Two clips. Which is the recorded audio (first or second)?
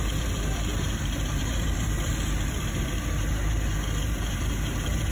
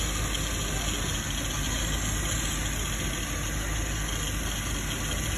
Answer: second